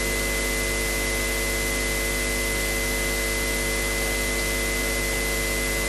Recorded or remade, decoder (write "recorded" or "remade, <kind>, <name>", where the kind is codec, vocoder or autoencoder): recorded